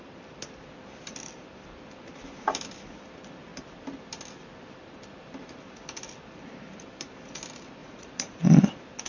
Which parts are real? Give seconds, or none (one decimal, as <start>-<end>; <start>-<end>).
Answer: 0.0-7.8; 8.4-9.1

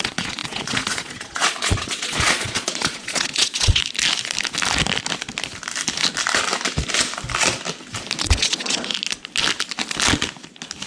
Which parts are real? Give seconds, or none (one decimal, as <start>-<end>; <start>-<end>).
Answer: 3.8-8.2; 8.9-10.9

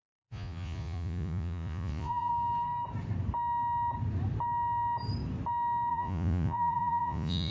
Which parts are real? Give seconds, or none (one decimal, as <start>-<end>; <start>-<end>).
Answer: 2.3-5.9

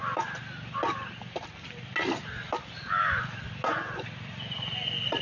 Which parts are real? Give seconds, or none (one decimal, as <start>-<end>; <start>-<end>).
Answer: 0.0-5.2

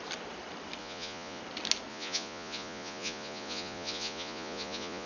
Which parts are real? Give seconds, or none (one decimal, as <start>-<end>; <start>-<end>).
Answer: 0.0-0.8; 1.4-1.9

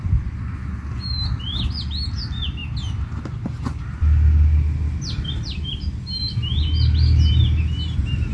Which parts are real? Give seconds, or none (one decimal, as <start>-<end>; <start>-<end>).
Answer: 0.0-8.3

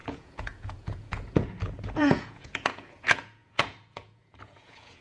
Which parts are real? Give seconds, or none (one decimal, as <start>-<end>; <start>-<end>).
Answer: none